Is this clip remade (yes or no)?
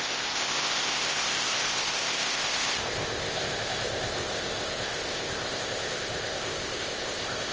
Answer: yes